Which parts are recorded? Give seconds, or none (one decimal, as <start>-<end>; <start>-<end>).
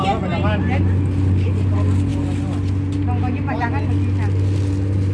0.0-5.1